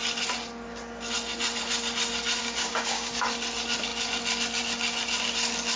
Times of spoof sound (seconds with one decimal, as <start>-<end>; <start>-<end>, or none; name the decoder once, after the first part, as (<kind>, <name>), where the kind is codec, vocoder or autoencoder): 2.4-3.1 (codec, DAC)